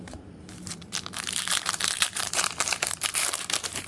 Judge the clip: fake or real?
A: fake